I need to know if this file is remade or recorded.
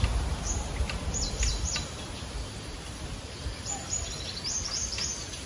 recorded